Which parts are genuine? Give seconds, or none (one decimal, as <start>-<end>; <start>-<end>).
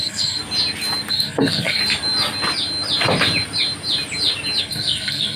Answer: 0.4-1.1; 1.8-4.6